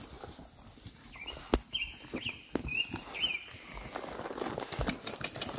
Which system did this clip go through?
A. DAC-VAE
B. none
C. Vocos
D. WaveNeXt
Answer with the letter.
B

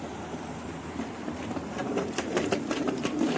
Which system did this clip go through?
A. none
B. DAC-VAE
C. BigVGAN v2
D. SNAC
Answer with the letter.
C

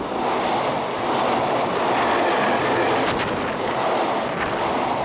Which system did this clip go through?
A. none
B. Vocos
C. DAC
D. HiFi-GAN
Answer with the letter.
A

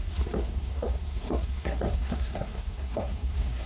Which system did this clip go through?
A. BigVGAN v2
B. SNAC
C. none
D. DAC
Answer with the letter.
B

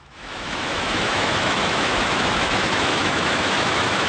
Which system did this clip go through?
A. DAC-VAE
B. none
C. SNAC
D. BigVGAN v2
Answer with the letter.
A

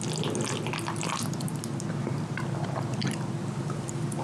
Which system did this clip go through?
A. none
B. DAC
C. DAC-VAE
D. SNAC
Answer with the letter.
A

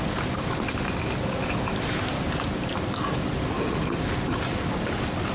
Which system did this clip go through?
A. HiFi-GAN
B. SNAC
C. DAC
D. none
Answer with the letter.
D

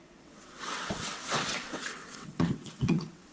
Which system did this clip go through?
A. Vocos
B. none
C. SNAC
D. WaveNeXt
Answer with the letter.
D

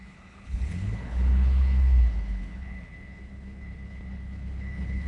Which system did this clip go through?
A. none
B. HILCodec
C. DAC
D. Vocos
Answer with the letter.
B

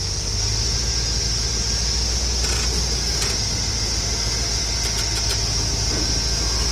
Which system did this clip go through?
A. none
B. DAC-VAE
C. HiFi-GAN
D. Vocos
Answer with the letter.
A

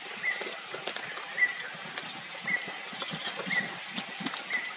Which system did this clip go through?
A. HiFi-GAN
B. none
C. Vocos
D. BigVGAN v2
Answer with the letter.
B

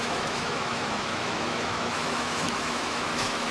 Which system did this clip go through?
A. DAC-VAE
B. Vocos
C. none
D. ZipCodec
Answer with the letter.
A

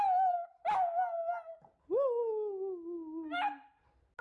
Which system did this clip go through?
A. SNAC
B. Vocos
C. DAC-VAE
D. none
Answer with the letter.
D